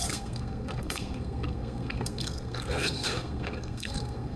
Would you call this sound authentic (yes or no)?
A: no